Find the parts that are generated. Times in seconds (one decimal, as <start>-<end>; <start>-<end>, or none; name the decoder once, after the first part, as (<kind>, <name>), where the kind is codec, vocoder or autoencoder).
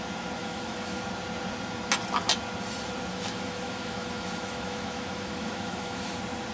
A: 0.4-1.0 (autoencoder, DAC-VAE); 3.1-6.1